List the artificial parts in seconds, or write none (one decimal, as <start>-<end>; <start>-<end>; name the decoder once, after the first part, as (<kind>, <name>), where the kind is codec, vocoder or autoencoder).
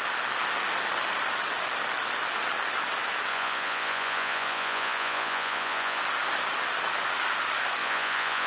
3.3-6.0 (vocoder, Vocos); 7.8-8.5